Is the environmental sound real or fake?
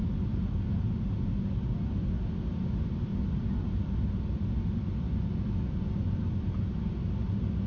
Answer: real